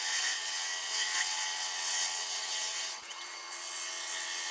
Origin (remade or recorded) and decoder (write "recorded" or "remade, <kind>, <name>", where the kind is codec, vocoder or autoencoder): remade, vocoder, WaveNeXt